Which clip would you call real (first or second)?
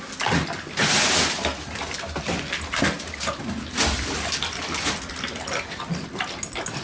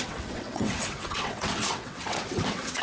first